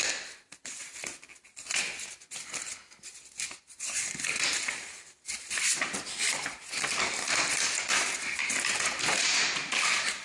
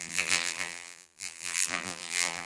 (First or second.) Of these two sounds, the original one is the first